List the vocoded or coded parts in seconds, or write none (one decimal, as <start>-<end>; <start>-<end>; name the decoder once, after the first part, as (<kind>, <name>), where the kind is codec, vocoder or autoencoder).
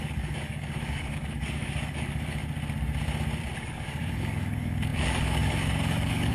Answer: 0.0-2.4 (codec, DAC); 3.6-6.3